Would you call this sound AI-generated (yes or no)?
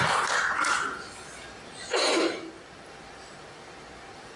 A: no